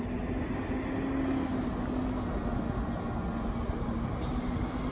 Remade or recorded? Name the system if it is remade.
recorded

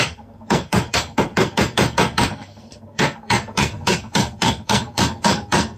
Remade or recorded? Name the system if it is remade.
remade, codec, SNAC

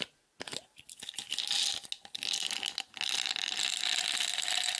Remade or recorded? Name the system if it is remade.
recorded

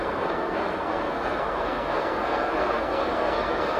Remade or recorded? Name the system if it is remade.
remade, codec, SNAC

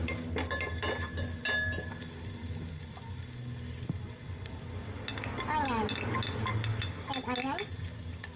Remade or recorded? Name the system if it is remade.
recorded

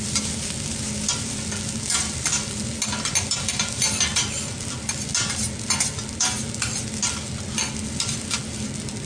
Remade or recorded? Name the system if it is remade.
recorded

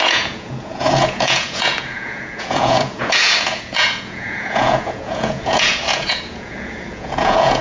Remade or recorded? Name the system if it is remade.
remade, vocoder, Vocos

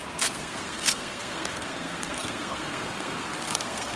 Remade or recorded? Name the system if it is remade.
remade, codec, SNAC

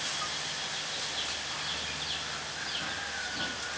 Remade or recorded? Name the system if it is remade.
recorded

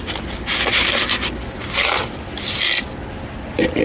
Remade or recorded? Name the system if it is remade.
recorded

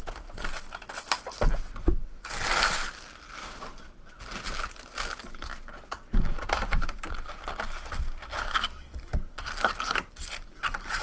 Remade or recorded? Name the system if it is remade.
recorded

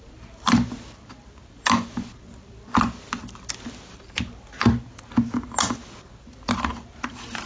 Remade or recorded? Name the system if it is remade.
recorded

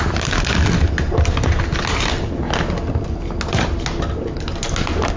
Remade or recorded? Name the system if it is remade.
recorded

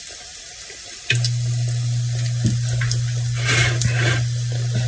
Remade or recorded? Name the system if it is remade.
recorded